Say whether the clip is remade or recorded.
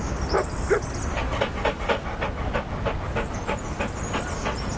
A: recorded